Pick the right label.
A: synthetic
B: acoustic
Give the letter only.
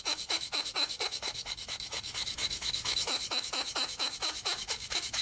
A